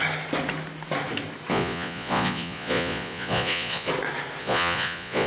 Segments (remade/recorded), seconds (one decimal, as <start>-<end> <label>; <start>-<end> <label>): 0.0-1.5 recorded; 1.5-3.9 remade; 3.9-4.4 recorded; 4.4-5.3 remade